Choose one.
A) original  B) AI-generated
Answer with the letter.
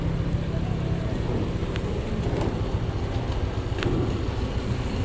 A